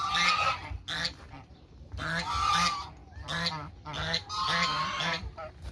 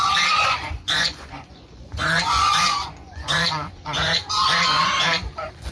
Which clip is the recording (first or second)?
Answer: first